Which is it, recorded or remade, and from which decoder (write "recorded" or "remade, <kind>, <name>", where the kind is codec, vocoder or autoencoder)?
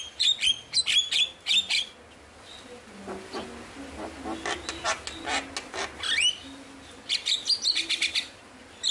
recorded